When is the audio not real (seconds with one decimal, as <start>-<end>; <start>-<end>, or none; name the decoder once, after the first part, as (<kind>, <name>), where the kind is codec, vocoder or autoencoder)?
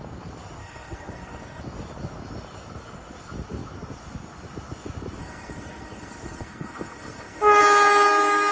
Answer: 0.6-1.6 (codec, SNAC); 5.2-7.6